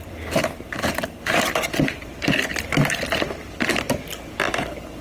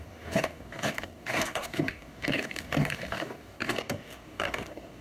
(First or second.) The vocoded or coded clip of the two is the second